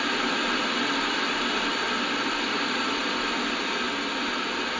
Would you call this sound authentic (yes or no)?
yes